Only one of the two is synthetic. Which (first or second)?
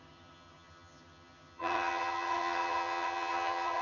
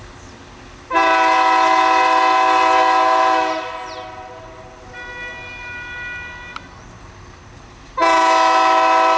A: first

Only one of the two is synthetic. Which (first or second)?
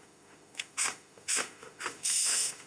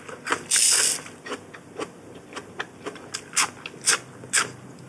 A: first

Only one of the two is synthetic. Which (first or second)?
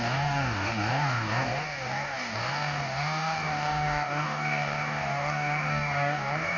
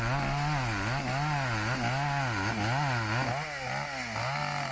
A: first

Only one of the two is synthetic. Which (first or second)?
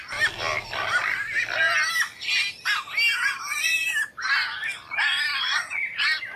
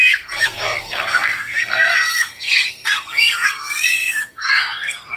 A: second